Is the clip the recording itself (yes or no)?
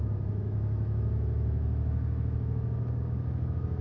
no